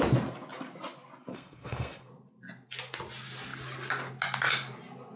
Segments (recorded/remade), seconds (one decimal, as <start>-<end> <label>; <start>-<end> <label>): 0.0-1.3 recorded; 1.3-2.1 remade; 2.1-5.2 recorded